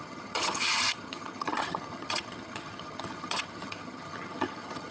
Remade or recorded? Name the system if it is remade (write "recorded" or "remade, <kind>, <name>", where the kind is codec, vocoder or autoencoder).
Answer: remade, vocoder, HiFi-GAN